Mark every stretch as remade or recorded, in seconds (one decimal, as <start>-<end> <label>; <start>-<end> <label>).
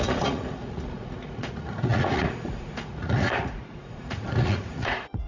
0.0-5.3 remade